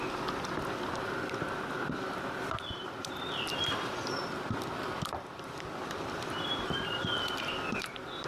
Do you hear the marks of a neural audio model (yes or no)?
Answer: yes